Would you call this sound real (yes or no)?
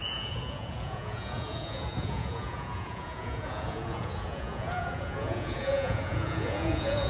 no